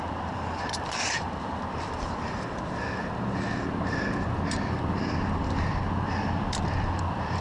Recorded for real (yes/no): no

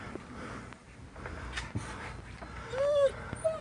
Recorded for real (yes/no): yes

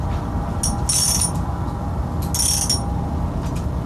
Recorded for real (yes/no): yes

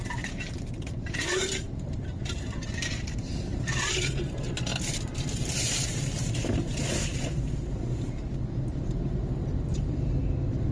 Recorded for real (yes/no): no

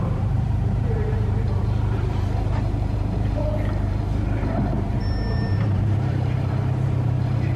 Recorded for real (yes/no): no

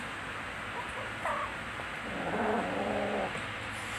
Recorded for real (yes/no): yes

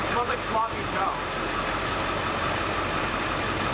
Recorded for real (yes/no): no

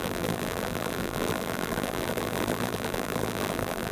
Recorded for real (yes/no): no